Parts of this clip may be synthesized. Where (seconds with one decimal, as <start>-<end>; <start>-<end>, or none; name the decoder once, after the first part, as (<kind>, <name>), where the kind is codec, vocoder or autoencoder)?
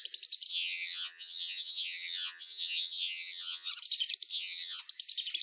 0.5-3.7 (vocoder, HiFi-GAN); 4.3-4.8